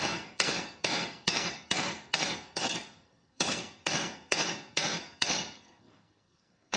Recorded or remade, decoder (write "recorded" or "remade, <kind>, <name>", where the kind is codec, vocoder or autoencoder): remade, codec, SNAC